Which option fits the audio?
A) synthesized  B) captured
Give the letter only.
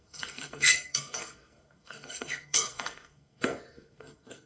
A